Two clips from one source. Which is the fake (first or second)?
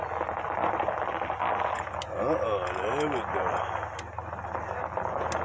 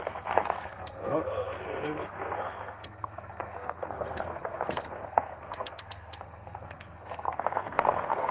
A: second